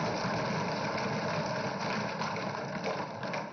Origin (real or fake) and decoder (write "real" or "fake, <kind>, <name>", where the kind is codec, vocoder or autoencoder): real